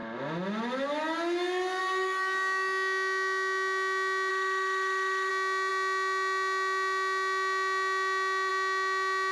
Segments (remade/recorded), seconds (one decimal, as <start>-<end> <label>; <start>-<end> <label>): 0.0-4.3 recorded; 4.3-5.3 remade; 5.3-9.3 recorded